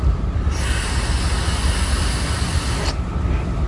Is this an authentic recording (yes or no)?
yes